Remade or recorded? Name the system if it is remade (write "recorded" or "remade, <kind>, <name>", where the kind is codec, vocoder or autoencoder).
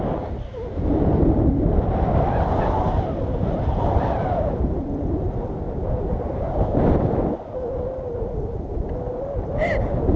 recorded